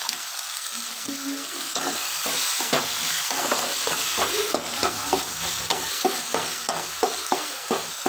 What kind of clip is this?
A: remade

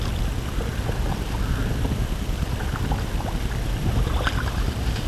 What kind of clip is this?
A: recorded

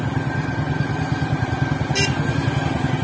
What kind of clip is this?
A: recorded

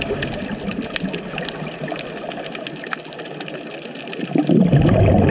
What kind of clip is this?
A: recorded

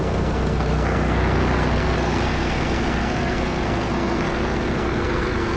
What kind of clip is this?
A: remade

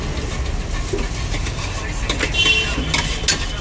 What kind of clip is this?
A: recorded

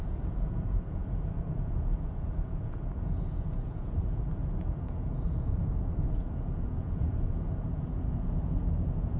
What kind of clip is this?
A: remade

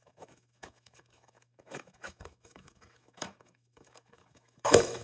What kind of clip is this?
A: remade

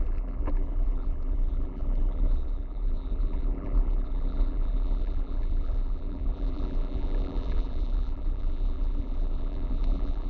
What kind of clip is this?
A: remade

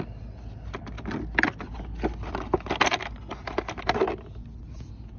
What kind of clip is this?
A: recorded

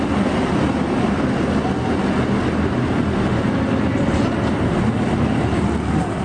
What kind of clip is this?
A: recorded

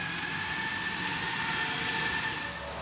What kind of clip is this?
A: recorded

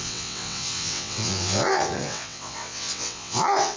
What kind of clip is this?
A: remade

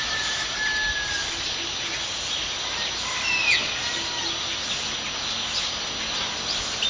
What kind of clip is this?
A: recorded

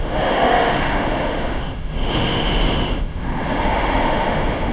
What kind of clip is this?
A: remade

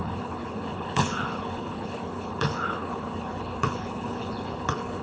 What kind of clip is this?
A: remade